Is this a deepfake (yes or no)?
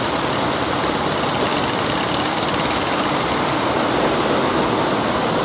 no